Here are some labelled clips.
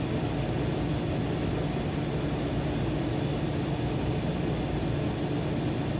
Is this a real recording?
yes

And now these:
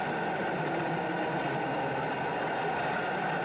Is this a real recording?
yes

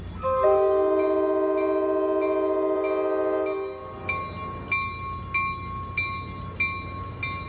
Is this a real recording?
yes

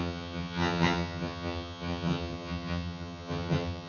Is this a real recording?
no